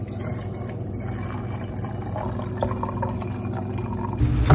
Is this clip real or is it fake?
real